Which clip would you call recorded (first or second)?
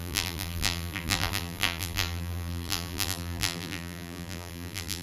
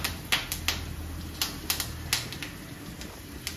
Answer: second